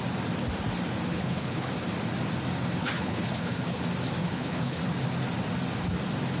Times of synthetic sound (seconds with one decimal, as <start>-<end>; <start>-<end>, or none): 1.1-1.7; 2.8-3.8; 4.2-4.8